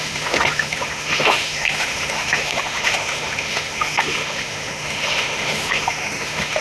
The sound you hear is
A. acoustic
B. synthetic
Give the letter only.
B